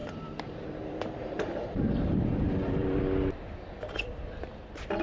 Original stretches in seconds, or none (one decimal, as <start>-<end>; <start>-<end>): 3.0-5.0